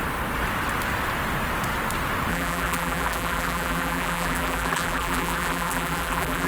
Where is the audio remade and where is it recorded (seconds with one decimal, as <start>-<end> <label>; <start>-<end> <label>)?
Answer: 0.0-2.3 recorded; 2.3-6.5 remade